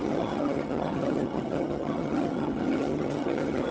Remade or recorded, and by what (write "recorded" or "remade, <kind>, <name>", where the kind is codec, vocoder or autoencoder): remade, vocoder, HiFi-GAN